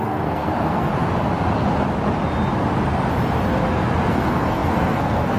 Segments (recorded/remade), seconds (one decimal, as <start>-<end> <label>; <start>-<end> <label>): 0.0-0.9 remade; 0.9-4.1 recorded; 4.1-5.4 remade